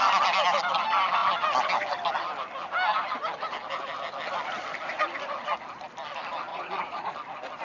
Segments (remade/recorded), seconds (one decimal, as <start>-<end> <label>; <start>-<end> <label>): 0.0-6.5 recorded; 6.5-7.1 remade; 7.1-7.6 recorded